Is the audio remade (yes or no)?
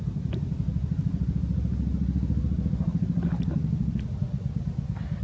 no